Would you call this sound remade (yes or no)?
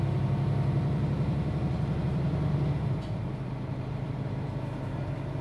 no